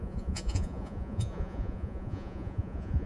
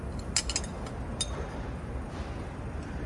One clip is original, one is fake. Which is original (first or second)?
second